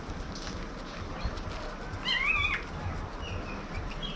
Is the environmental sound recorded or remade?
recorded